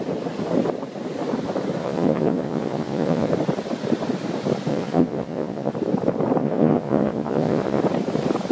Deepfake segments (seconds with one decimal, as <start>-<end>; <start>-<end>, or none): 1.8-3.3; 4.7-5.7; 6.4-7.8